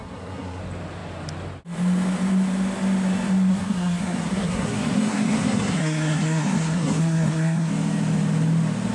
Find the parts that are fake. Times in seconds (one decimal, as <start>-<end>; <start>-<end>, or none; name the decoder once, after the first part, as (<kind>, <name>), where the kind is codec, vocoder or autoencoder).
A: 0.0-0.6 (codec, SNAC); 3.5-7.7